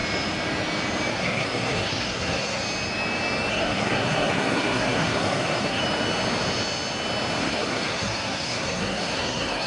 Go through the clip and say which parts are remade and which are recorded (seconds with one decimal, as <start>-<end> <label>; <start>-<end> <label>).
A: 0.0-1.1 recorded; 1.1-2.6 remade; 2.6-3.5 recorded; 3.5-5.8 remade; 5.8-7.4 recorded; 7.4-9.7 remade